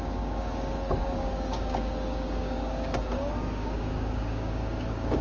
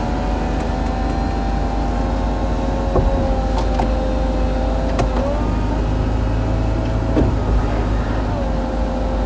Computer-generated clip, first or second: first